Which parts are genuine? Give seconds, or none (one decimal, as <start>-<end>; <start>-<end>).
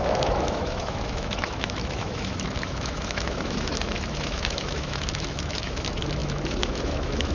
none